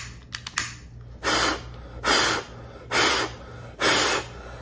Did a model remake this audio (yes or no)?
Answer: no